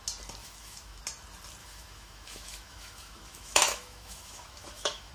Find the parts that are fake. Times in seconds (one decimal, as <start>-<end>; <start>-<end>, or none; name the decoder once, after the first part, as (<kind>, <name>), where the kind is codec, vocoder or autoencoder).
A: 0.4-1.0 (autoencoder, DAC-VAE); 1.6-5.1